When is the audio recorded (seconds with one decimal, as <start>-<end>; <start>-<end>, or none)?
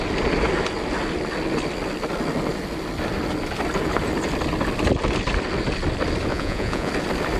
0.0-6.3; 6.9-7.4